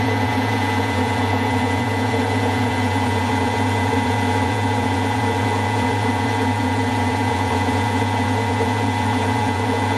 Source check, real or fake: fake